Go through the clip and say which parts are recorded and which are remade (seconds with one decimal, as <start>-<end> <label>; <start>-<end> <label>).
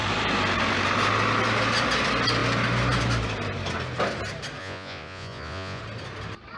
0.0-4.6 recorded; 4.6-5.8 remade; 5.8-6.6 recorded